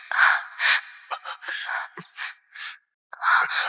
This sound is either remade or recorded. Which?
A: recorded